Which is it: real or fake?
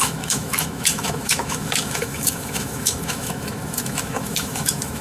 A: fake